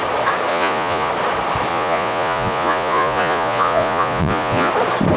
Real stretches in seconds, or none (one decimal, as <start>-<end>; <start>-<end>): 0.0-0.5; 1.1-1.7; 4.7-5.2